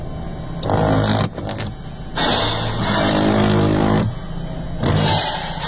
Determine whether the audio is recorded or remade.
recorded